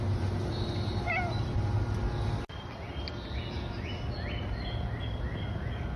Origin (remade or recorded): recorded